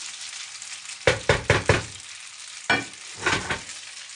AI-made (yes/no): no